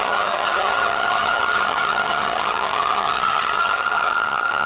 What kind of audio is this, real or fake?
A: fake